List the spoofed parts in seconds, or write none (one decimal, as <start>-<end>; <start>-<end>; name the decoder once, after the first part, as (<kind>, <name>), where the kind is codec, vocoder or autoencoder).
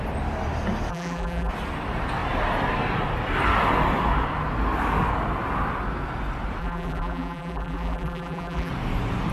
0.9-1.5 (vocoder, BigVGAN v2); 6.6-8.7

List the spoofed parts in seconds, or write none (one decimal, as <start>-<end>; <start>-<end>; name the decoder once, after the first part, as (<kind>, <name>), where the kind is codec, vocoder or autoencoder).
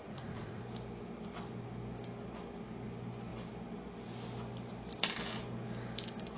0.0-0.6 (vocoder, Vocos)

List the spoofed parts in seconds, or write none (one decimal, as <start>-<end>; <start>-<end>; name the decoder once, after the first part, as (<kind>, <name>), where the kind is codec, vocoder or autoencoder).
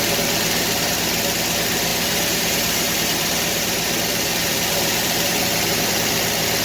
1.9-5.9 (vocoder, BigVGAN v2)